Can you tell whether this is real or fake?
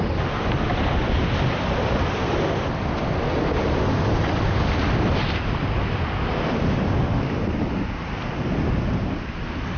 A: real